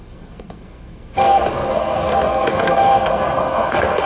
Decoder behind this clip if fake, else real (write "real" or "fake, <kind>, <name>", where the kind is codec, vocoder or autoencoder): fake, codec, SNAC